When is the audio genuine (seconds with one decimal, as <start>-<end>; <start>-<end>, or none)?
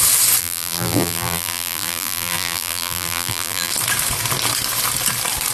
0.0-0.4; 3.7-5.5